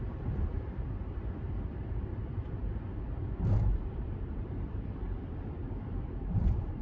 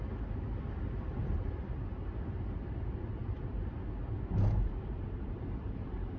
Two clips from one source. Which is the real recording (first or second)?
second